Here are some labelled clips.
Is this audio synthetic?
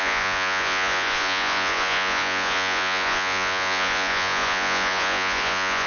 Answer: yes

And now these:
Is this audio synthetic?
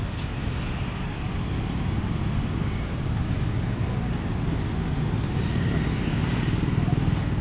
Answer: no